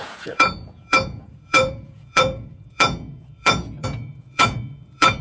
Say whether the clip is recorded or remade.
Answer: remade